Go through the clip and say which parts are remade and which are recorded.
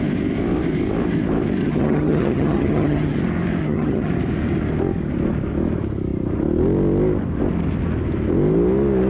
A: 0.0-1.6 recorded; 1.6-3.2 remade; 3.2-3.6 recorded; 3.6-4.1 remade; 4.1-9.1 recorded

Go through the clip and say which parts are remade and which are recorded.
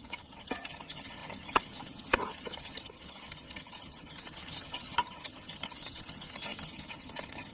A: 0.0-7.5 remade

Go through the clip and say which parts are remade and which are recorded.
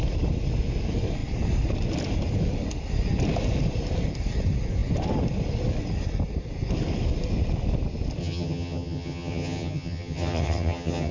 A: 0.0-8.2 recorded; 8.2-11.1 remade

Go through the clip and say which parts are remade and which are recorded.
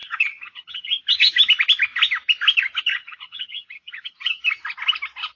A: 0.0-1.3 remade; 1.3-2.9 recorded; 2.9-4.4 remade; 4.4-5.4 recorded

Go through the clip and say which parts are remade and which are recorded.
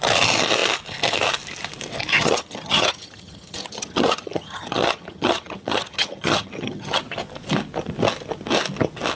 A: 0.0-2.1 recorded; 2.1-7.0 remade; 7.0-9.2 recorded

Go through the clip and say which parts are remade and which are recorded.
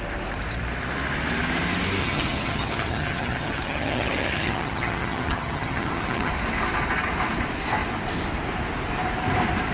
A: 0.0-2.0 recorded; 2.0-6.3 remade; 6.3-9.7 recorded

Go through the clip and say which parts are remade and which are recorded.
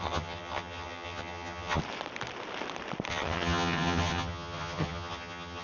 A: 0.0-1.8 remade; 1.8-3.1 recorded; 3.1-5.6 remade